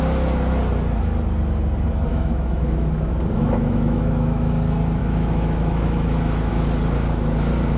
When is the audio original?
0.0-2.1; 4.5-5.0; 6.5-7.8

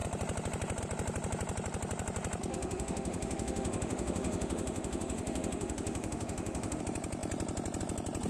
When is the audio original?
0.0-2.5; 6.8-8.3